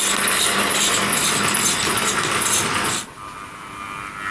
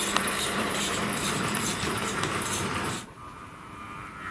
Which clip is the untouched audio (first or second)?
first